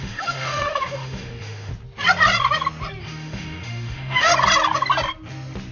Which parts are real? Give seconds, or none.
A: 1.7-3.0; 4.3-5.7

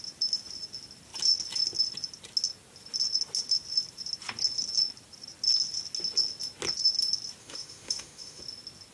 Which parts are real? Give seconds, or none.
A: 0.0-7.4; 8.4-8.9

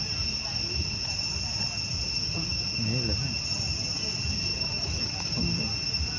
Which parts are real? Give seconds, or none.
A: 0.0-4.5; 5.3-6.2

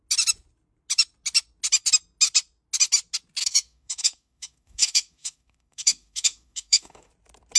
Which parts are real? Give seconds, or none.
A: 0.0-3.4; 7.1-7.6

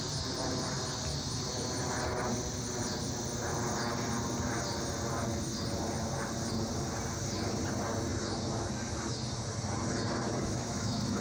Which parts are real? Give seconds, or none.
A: 0.0-10.4